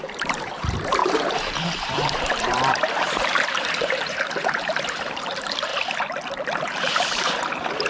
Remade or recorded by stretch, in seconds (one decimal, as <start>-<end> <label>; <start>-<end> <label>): 0.0-5.7 remade; 5.7-6.6 recorded; 6.6-7.9 remade